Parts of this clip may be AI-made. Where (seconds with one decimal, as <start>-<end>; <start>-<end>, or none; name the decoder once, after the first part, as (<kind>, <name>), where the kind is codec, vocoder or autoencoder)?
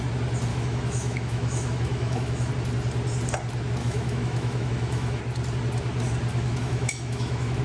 0.5-2.5 (autoencoder, DAC-VAE); 3.8-5.2; 6.3-7.6